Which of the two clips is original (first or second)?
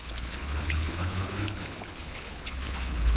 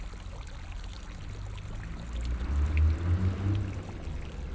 second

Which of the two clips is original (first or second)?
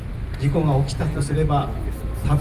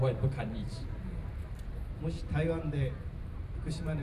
first